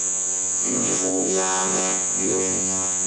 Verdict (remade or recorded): remade